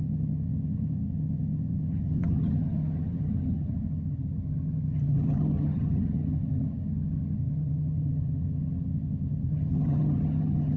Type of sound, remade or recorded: remade